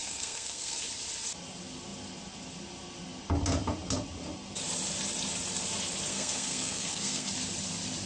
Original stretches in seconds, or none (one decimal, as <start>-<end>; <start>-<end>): 0.8-6.1; 7.3-8.1